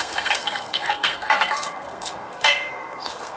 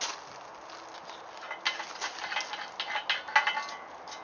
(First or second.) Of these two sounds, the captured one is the second